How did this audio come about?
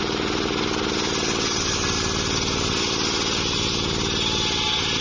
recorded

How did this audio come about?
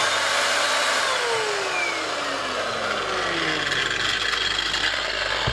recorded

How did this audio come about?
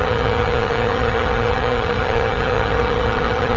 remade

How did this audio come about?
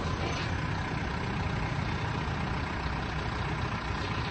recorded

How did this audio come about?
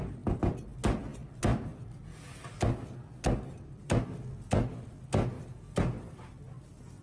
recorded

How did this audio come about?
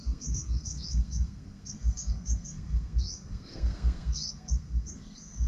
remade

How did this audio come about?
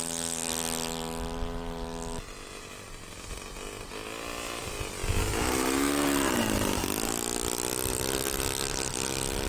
recorded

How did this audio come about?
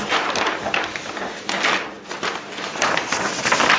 recorded